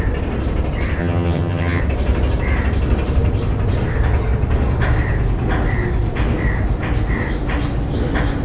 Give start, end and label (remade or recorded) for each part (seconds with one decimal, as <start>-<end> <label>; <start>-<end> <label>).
0.0-1.0 recorded; 1.0-1.8 remade; 1.8-8.4 recorded